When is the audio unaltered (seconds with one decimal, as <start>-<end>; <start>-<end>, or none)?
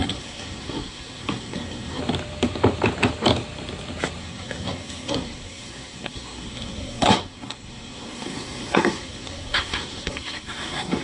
2.0-4.2